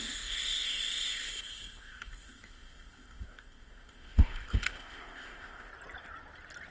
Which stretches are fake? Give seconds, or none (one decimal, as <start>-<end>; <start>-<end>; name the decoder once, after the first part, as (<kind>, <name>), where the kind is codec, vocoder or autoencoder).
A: 0.0-5.7 (codec, ZipCodec)

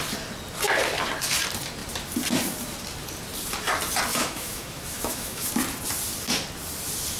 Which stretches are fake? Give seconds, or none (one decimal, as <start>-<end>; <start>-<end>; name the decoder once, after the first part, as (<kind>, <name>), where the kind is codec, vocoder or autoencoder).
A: 4.1-5.5 (autoencoder, DAC-VAE)

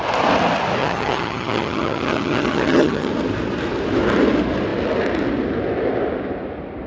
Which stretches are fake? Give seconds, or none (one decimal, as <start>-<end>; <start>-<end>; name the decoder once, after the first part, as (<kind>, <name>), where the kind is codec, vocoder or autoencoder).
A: 0.8-3.1 (vocoder, HiFi-GAN)

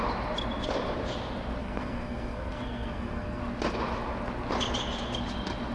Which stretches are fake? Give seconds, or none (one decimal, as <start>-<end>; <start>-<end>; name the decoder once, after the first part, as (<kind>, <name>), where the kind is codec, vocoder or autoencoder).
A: 1.6-3.4 (codec, SNAC)

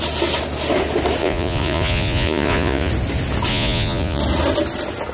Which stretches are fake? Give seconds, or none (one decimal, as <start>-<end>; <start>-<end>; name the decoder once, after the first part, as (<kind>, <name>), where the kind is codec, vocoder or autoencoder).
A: 1.2-2.9 (vocoder, Vocos); 3.5-4.2